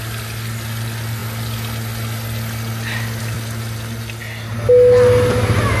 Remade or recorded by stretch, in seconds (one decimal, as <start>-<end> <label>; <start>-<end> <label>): 0.0-5.8 recorded